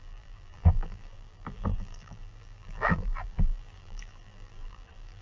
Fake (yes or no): yes